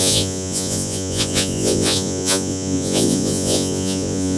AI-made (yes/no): yes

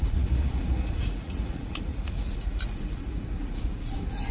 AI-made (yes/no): yes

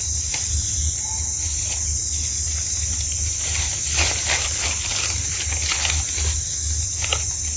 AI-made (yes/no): no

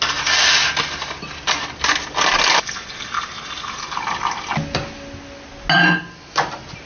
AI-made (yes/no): no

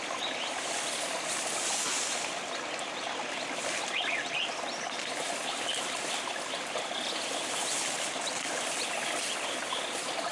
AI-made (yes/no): no